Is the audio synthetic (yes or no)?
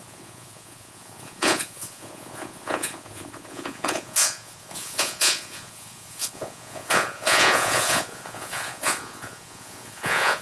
yes